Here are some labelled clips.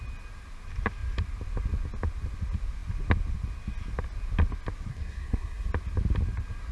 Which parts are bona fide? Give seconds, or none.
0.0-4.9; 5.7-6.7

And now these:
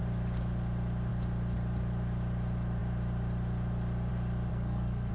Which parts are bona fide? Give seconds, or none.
0.0-4.5

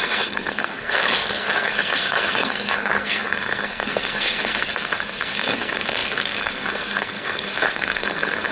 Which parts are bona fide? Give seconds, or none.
none

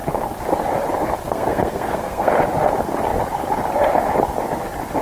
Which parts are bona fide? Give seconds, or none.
0.0-1.2; 2.3-5.0

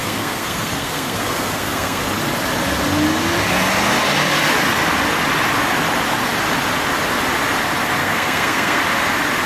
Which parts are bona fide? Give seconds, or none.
2.0-8.0; 8.8-9.5